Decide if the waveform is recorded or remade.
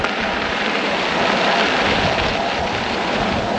recorded